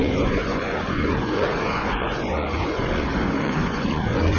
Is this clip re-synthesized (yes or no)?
yes